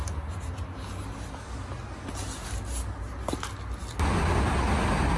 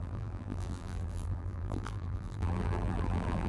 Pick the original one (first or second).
first